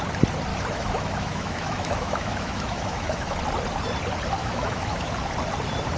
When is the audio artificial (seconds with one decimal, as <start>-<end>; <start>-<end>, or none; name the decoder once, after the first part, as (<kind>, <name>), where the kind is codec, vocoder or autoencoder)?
0.5-3.4 (autoencoder, DAC-VAE); 4.4-5.1